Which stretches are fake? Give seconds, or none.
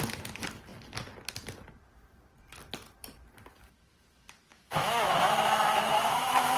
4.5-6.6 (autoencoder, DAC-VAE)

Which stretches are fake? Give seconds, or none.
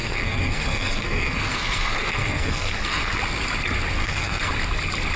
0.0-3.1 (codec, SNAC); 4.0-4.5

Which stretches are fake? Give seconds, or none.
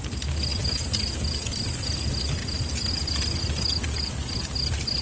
none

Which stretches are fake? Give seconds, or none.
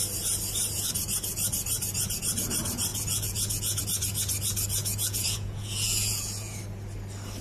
2.9-3.8 (vocoder, Vocos); 4.8-6.6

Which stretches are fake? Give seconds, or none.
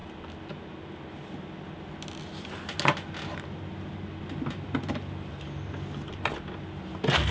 none